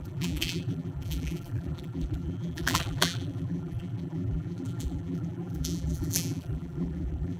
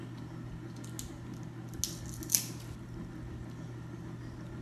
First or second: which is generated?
first